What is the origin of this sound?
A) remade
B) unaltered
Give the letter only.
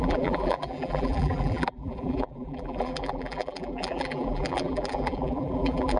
A